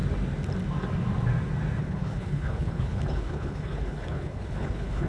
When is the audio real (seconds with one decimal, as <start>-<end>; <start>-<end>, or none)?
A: 0.0-1.8